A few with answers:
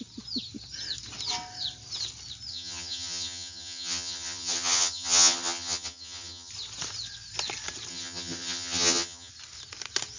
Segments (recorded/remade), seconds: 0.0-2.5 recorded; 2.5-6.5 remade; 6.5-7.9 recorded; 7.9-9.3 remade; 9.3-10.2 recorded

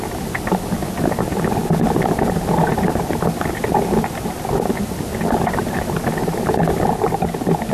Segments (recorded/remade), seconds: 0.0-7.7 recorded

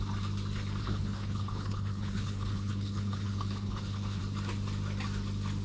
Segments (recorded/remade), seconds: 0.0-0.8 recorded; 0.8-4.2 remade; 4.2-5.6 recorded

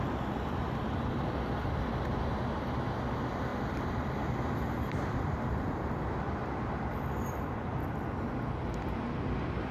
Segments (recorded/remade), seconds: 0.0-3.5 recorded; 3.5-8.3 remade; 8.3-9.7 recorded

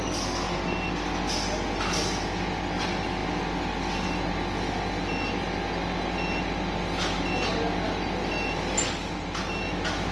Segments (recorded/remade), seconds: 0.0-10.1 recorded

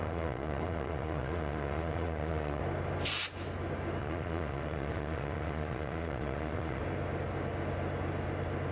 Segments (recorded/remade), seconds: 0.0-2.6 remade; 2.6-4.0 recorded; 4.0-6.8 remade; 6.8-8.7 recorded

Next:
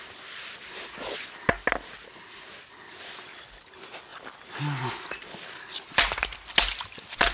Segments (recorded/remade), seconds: 0.0-7.3 recorded

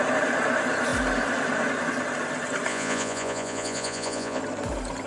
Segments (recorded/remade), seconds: 0.0-2.7 recorded; 2.7-4.4 remade; 4.4-5.1 recorded